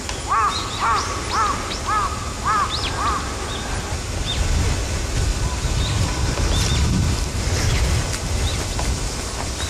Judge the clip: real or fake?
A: real